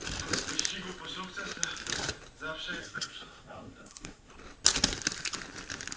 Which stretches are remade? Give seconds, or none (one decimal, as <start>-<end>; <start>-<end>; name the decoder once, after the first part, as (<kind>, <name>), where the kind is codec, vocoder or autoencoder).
2.8-4.3 (codec, SNAC)